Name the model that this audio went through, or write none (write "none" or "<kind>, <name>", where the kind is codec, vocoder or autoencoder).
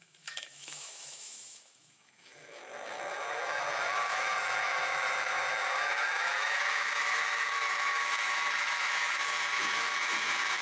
autoencoder, DAC-VAE